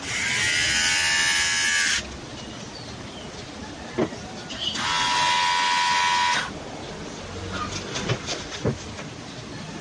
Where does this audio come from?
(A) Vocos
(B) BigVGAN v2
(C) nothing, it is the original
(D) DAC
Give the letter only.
C